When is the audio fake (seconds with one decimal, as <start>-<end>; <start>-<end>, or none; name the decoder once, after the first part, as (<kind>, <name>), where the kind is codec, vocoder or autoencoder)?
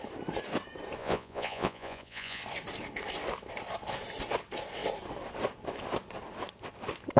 1.0-2.4 (vocoder, Vocos)